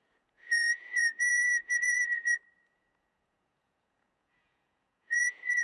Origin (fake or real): fake